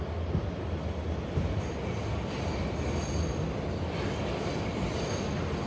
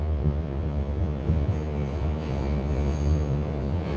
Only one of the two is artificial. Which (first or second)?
second